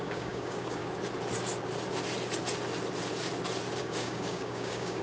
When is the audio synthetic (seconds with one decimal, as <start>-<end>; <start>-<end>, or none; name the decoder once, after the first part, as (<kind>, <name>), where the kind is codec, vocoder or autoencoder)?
0.0-0.8 (codec, DAC); 3.8-5.0